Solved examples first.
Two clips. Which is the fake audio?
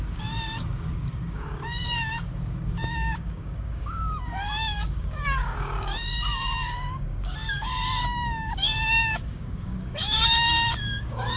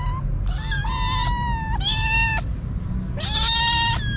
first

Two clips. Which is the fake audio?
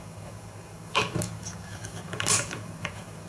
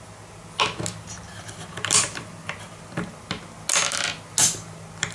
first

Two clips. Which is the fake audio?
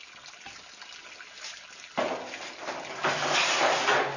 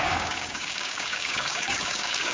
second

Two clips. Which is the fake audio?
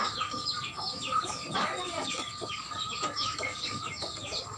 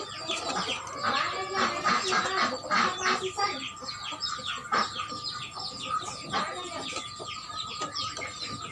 first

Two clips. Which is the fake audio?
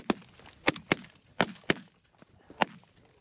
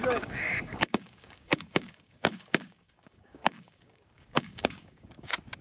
second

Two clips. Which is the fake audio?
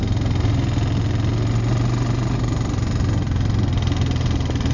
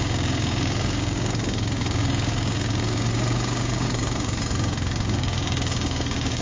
second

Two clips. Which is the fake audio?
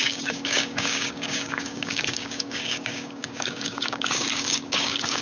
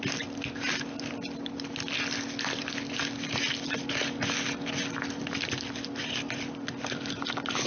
first